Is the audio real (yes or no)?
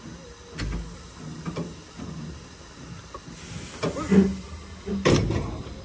yes